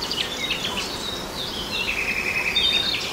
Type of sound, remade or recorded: remade